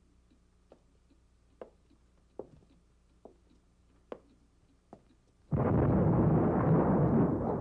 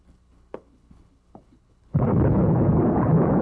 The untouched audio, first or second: first